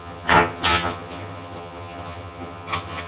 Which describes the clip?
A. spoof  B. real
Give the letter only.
A